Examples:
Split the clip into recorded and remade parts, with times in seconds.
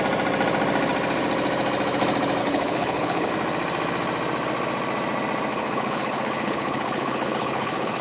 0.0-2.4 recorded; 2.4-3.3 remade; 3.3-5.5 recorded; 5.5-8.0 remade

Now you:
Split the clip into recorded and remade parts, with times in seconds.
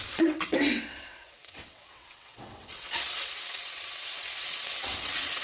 0.0-5.4 remade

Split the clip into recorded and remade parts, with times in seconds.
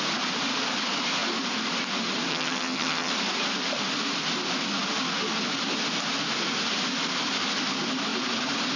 0.0-2.3 recorded; 2.3-3.1 remade; 3.1-8.8 recorded